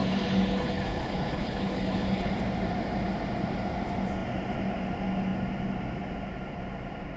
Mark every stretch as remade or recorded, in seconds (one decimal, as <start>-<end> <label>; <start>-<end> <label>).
0.0-2.3 remade; 2.3-7.2 recorded